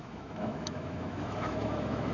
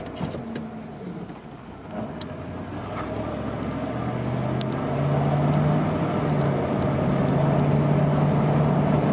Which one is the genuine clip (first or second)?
second